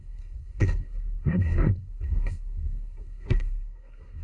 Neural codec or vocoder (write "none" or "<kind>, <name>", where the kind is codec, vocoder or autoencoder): codec, SNAC